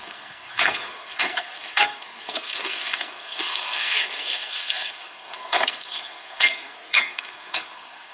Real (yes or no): no